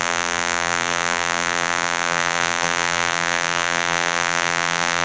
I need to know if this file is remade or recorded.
remade